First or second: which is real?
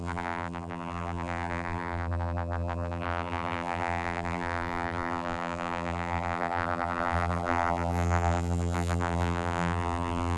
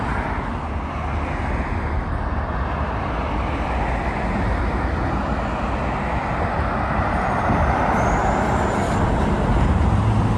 second